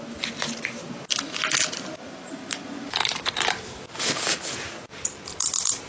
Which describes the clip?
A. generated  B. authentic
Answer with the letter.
B